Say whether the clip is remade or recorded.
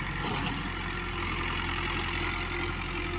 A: recorded